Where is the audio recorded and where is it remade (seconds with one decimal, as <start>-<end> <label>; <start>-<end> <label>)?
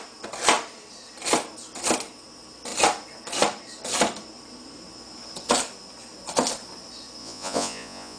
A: 0.0-7.2 recorded; 7.2-8.2 remade